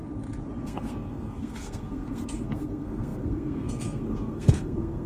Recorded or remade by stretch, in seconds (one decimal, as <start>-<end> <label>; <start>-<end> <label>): 0.0-0.6 recorded; 0.6-5.1 remade